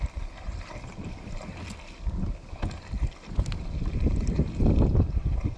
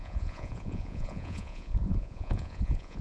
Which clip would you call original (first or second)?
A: first